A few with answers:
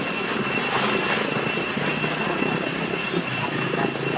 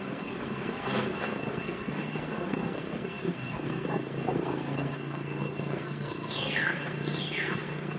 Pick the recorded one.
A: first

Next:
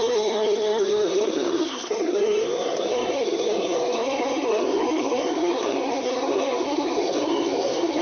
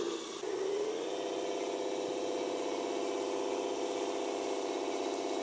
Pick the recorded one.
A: second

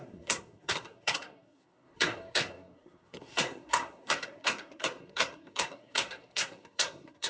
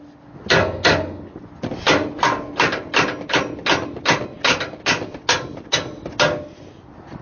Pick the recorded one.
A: second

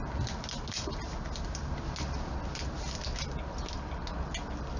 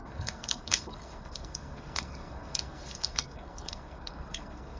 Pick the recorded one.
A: first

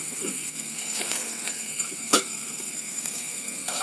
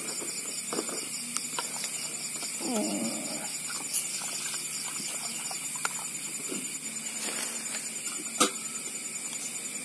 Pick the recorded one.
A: second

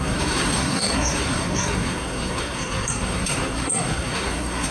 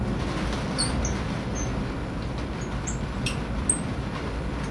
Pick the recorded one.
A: second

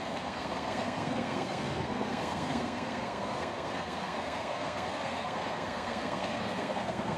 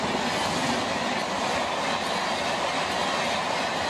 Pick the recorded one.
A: second